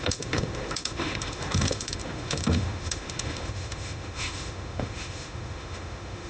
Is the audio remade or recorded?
remade